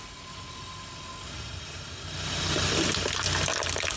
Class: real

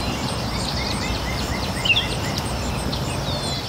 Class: fake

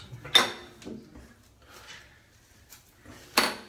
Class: real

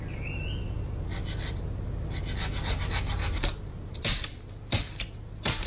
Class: real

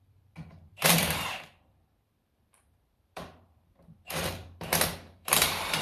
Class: fake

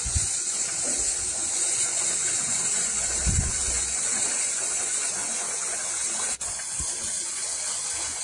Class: fake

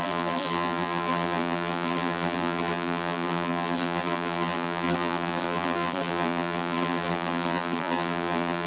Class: fake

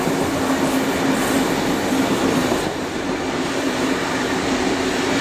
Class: real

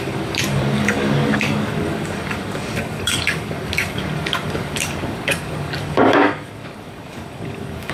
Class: fake